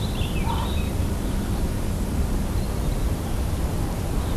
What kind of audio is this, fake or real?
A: fake